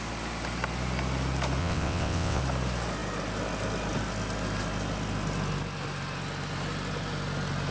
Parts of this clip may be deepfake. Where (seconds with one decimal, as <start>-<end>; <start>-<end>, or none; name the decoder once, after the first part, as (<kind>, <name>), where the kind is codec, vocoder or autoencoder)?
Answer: 1.6-2.4 (vocoder, WaveNeXt)